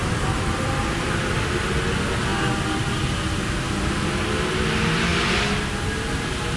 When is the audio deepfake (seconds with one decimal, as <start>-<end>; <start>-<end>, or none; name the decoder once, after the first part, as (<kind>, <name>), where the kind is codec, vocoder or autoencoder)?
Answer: 0.0-1.4 (vocoder, BigVGAN v2)